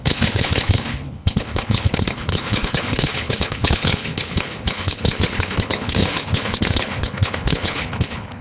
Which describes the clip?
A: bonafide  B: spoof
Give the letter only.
B